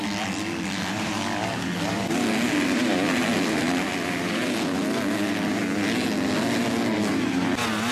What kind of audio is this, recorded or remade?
recorded